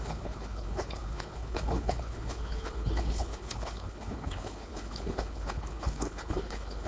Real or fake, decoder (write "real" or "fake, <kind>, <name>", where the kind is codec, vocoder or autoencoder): fake, codec, HILCodec